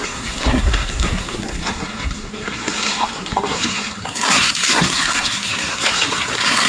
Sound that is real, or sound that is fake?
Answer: fake